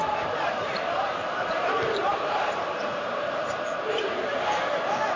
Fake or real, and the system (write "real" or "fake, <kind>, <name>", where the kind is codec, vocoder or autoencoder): fake, vocoder, BigVGAN v2